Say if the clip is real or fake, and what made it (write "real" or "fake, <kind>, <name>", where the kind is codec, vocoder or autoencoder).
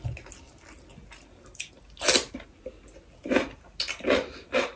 real